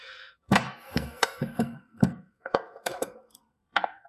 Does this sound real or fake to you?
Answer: fake